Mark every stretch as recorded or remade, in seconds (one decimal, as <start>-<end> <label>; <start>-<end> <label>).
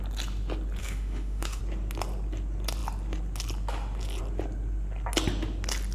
0.0-0.8 recorded; 0.8-1.6 remade; 1.6-5.9 recorded